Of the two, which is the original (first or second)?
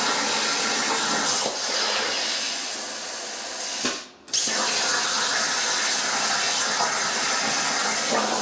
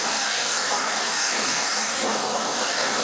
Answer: first